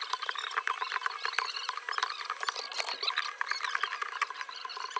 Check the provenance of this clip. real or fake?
real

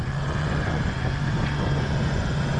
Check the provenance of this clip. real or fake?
fake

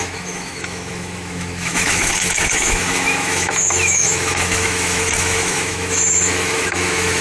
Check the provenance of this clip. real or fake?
fake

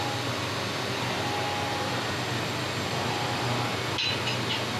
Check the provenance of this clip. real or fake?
real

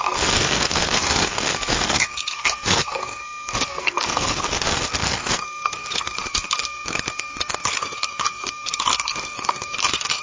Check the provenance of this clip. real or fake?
fake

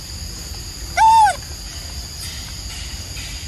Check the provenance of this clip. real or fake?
real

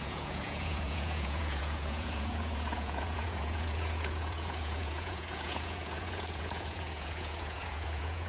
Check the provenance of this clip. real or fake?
fake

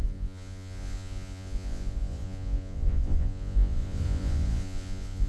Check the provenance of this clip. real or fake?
fake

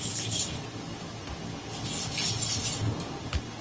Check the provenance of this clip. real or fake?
real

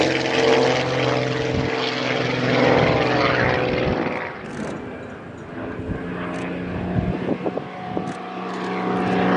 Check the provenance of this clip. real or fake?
real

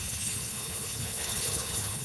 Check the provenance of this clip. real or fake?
fake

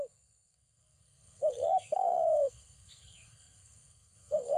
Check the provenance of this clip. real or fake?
fake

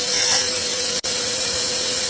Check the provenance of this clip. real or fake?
fake